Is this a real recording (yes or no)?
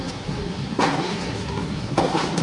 no